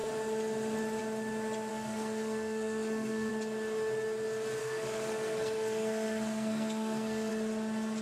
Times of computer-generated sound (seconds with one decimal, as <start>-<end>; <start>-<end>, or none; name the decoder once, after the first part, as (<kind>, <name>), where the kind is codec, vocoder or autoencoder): 1.7-3.3 (codec, SNAC); 4.6-7.3